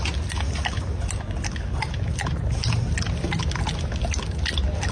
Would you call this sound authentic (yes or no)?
yes